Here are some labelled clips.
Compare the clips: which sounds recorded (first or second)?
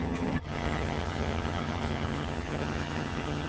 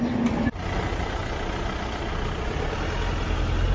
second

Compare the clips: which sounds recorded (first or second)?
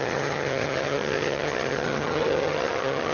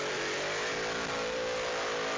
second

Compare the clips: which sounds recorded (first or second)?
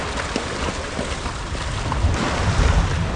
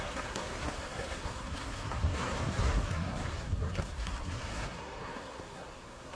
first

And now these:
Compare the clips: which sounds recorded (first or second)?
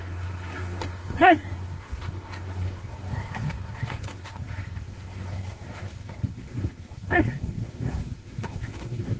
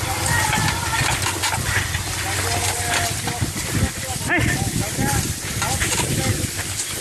second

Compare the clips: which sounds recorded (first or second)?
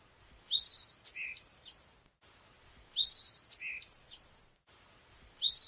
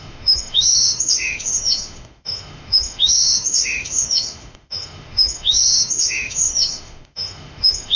first